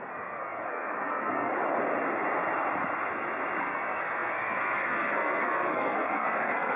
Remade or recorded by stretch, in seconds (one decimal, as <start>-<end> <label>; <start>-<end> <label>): 0.0-1.5 remade; 1.5-3.6 recorded; 3.6-6.8 remade